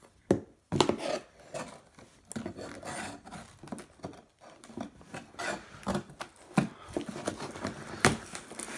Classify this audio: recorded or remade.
recorded